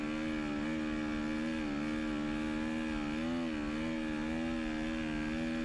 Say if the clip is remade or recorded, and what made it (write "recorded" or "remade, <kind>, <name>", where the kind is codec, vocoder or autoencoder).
recorded